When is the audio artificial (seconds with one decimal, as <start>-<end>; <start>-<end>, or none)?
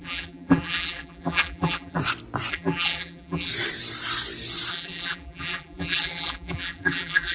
0.0-2.0; 2.5-3.5; 4.7-7.3